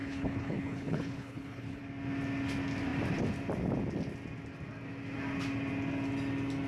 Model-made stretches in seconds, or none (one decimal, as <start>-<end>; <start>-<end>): 0.0-1.8